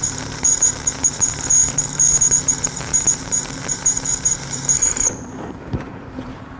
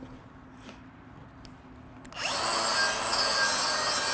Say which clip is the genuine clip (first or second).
second